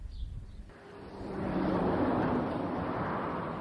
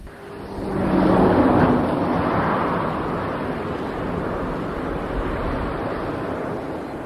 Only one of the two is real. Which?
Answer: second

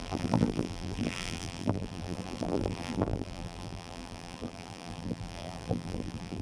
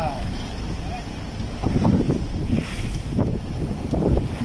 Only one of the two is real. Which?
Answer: second